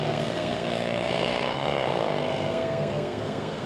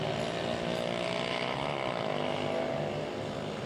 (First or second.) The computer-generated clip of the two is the first